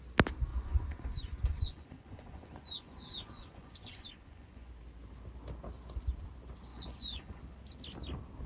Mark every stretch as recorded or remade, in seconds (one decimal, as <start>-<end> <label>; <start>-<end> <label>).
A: 0.0-0.5 recorded; 0.5-4.7 remade; 4.7-6.7 recorded; 6.7-7.4 remade; 7.4-8.5 recorded